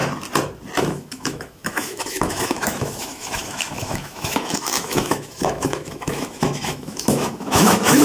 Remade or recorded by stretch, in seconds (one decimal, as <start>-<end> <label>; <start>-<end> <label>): 0.0-0.8 recorded; 0.8-8.0 remade